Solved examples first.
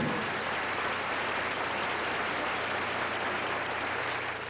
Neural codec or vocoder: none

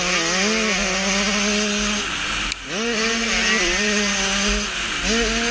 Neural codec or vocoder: none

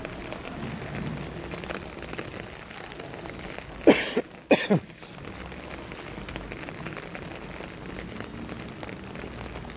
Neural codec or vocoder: none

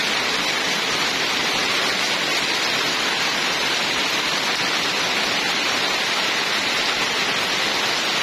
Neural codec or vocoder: none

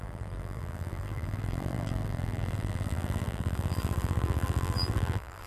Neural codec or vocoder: vocoder, BigVGAN v2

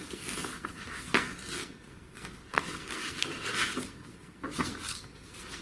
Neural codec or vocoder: codec, SNAC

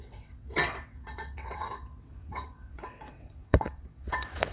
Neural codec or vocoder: vocoder, WaveNeXt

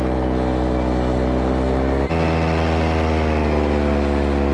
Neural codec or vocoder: none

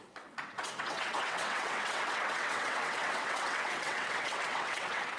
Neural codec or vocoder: vocoder, WaveNeXt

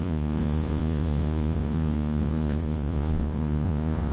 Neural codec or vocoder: vocoder, Vocos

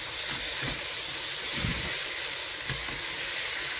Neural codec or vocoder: none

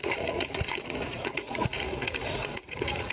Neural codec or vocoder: vocoder, Vocos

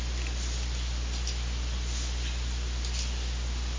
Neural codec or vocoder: none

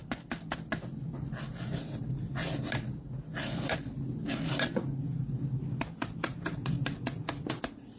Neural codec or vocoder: none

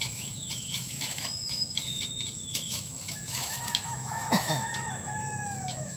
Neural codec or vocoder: autoencoder, DAC-VAE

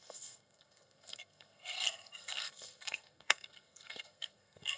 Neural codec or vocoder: codec, SNAC